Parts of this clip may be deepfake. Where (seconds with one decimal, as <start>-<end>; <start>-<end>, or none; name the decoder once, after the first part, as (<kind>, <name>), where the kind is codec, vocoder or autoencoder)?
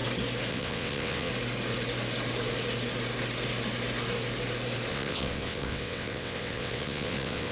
0.5-1.3 (vocoder, WaveNeXt); 4.9-7.5